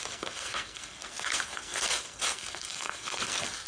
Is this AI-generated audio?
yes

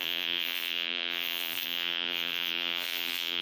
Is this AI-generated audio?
yes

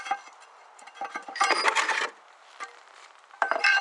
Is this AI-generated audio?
yes